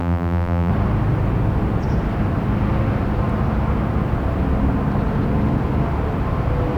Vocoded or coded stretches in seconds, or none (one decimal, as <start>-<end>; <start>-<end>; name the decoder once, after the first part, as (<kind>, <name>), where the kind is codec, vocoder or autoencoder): 0.0-0.7 (vocoder, BigVGAN v2)